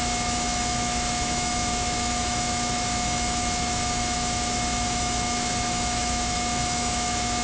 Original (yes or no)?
no